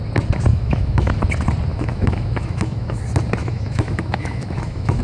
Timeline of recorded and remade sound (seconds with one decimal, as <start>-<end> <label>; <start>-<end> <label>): 0.0-0.5 recorded; 0.5-1.1 remade; 1.1-1.7 recorded; 1.7-3.0 remade; 3.0-3.4 recorded; 3.4-5.0 remade